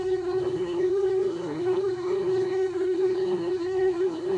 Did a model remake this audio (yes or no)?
yes